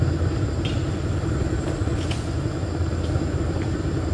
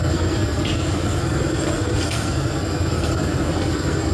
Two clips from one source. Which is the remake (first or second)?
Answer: second